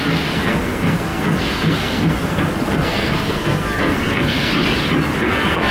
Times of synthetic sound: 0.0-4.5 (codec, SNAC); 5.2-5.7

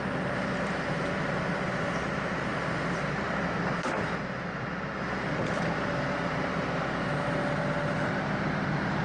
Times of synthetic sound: none

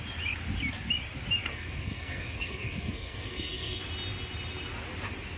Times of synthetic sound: 1.5-3.8 (codec, SNAC)

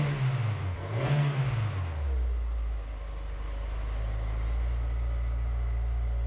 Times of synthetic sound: 0.6-1.4 (codec, SNAC)

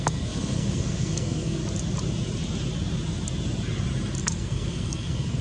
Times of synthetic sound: 0.0-1.6 (codec, SNAC); 4.2-5.4

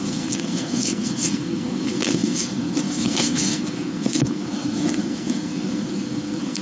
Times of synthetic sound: 0.0-6.6 (codec, SNAC)